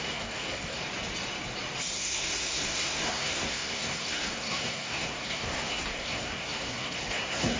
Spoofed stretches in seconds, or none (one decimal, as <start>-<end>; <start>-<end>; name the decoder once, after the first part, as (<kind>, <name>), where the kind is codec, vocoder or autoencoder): 0.0-0.8 (codec, SNAC); 1.9-7.6